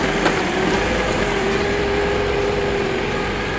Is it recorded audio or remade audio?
recorded